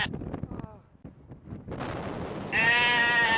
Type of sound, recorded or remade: recorded